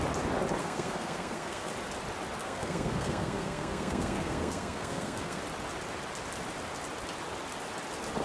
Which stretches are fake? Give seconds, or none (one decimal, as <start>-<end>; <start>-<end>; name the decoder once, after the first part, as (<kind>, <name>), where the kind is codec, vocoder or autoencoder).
0.6-1.7 (codec, SNAC); 2.4-5.4